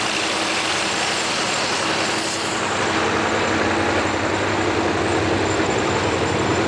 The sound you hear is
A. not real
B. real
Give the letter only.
B